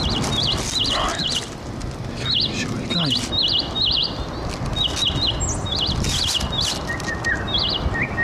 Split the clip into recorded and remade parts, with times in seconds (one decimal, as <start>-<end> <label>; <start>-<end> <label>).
0.0-1.1 recorded; 1.1-1.7 remade; 1.7-8.2 recorded